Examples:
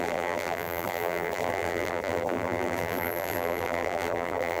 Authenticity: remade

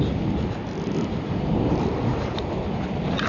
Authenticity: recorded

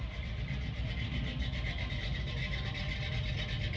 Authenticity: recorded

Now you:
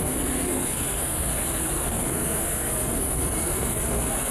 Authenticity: remade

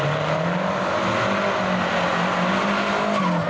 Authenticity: recorded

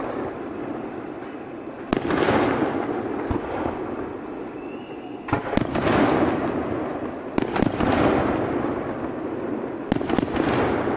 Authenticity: recorded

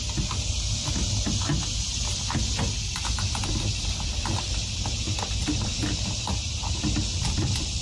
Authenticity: recorded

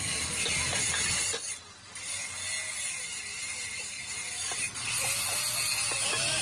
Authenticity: recorded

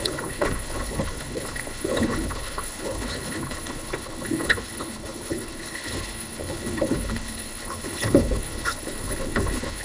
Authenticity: remade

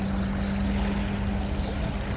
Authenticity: recorded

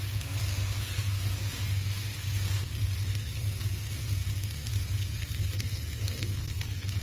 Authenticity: remade